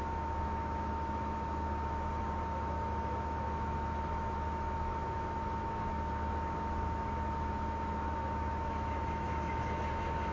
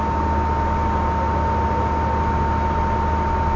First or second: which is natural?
second